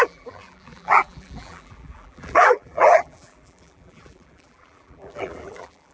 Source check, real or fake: fake